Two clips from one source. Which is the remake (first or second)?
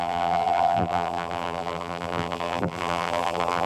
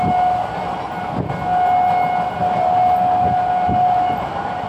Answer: first